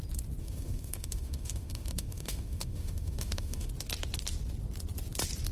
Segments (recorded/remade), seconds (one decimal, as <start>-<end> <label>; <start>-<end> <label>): 0.0-0.4 recorded; 0.4-3.7 remade; 3.7-5.5 recorded